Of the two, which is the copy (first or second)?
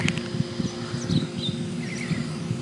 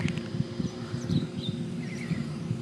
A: second